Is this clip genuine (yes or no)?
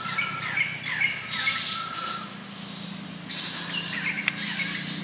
yes